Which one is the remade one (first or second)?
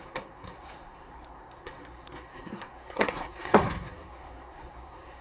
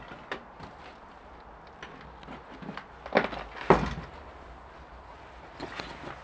first